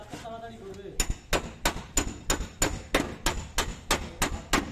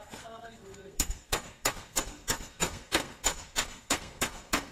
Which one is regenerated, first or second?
second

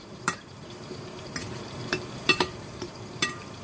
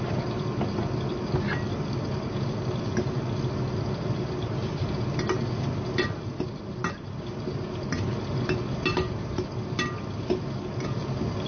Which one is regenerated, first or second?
first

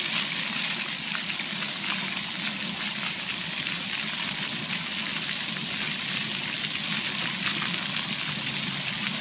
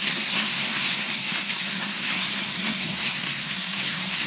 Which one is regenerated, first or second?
second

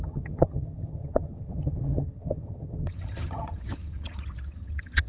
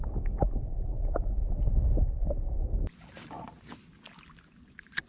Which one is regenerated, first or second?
first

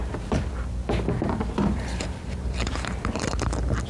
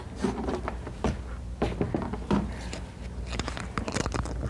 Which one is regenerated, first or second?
first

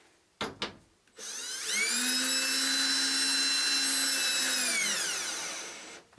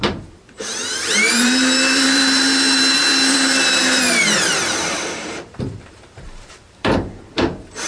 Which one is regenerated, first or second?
second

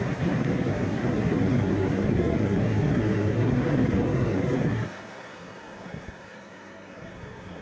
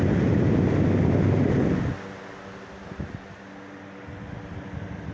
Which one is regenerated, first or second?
first